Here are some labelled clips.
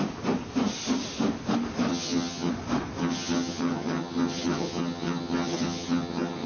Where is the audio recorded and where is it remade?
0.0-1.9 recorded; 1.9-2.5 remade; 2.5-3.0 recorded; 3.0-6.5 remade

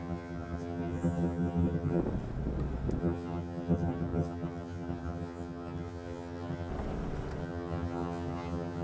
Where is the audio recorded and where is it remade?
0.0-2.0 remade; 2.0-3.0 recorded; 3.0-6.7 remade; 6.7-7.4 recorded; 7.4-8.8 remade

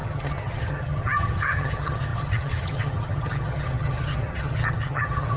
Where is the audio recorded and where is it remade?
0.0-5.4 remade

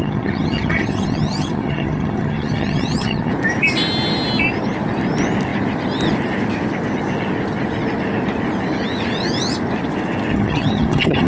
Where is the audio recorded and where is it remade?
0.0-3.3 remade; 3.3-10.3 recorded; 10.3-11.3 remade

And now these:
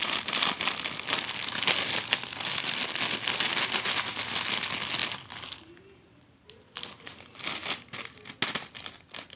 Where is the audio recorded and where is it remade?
0.0-9.4 recorded

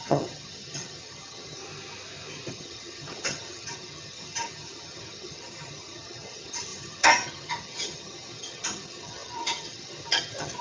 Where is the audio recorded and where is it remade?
0.0-1.6 remade; 1.6-2.5 recorded; 2.5-10.6 remade

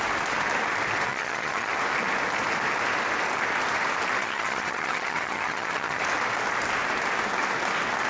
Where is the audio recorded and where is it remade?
0.0-1.1 recorded; 1.1-1.7 remade; 1.7-4.2 recorded; 4.2-6.0 remade; 6.0-8.1 recorded

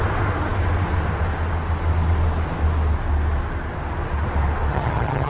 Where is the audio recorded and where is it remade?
0.0-4.7 recorded; 4.7-5.3 remade